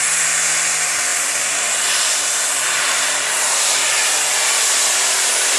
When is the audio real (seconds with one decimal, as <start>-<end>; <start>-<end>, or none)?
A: 0.0-1.1; 4.1-5.6